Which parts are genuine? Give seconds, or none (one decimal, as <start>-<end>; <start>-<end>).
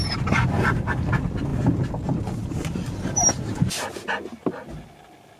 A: 0.0-5.4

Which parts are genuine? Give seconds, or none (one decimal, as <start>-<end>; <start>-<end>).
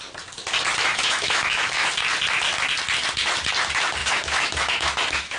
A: 0.0-0.9; 1.9-4.0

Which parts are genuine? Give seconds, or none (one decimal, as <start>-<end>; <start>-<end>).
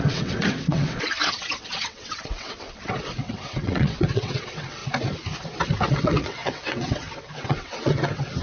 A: 4.8-5.8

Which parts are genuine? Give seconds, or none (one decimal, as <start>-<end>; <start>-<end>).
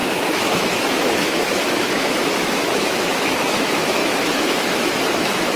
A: none